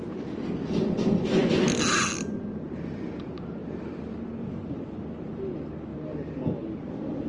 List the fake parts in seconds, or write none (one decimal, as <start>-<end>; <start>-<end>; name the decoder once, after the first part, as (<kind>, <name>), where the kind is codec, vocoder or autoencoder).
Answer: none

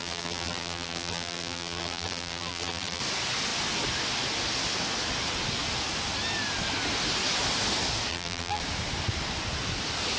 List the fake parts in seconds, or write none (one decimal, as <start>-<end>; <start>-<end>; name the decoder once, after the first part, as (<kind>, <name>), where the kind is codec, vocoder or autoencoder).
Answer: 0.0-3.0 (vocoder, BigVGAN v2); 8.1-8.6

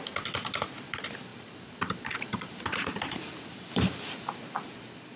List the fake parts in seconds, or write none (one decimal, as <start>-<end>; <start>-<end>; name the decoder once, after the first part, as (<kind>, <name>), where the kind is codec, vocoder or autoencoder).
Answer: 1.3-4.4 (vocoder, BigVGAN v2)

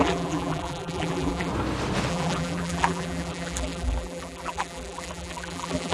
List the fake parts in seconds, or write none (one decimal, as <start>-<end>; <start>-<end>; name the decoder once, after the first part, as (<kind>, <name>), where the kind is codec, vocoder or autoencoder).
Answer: 0.0-1.5 (vocoder, BigVGAN v2); 2.1-5.9

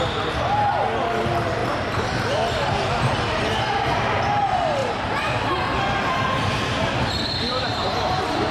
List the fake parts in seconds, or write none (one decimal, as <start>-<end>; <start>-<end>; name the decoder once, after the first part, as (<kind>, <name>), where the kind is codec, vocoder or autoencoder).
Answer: 1.6-3.0 (vocoder, BigVGAN v2); 4.8-5.8; 7.7-8.5

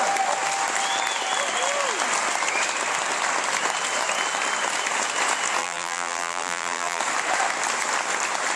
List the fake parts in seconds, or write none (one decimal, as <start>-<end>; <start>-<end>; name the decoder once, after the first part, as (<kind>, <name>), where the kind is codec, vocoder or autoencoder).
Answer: 5.6-7.0 (vocoder, BigVGAN v2)